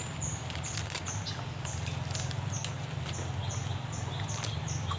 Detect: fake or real real